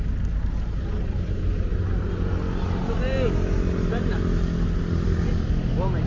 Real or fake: real